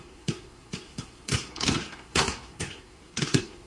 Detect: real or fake fake